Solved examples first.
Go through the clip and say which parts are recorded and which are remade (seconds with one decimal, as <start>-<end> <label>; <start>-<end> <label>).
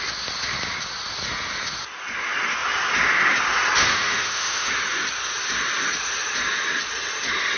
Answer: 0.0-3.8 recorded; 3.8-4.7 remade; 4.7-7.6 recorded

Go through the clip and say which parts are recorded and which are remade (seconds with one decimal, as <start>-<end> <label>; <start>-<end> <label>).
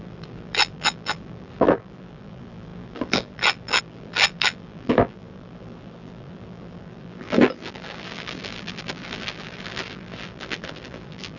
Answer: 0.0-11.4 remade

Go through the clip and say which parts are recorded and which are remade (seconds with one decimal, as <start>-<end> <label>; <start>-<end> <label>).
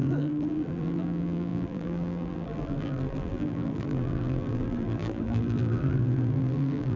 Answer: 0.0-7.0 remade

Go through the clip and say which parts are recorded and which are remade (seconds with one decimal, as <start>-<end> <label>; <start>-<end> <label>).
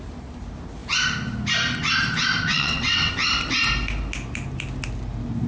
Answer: 0.0-2.5 recorded; 2.5-3.1 remade; 3.1-5.5 recorded